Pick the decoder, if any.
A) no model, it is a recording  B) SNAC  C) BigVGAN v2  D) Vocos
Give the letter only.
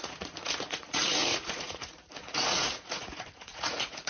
D